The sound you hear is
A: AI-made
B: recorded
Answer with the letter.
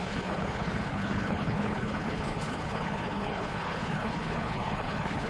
A